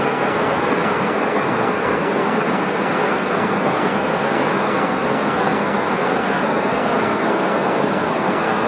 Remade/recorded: remade